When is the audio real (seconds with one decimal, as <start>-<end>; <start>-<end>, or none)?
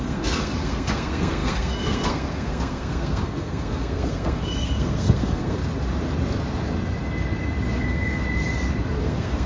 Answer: 5.6-7.8; 8.2-9.0